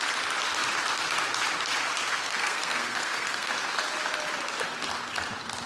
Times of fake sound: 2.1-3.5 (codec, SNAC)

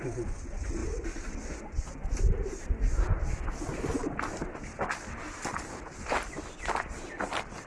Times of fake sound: none

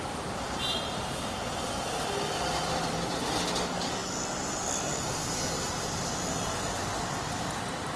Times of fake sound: 0.0-4.0 (vocoder, BigVGAN v2); 5.1-6.9